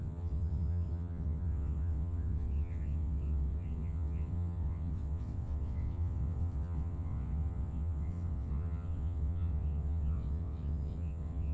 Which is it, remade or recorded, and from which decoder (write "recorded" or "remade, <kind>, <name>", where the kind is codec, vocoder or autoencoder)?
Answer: remade, vocoder, WaveNeXt